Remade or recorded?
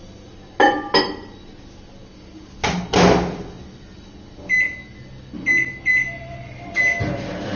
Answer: recorded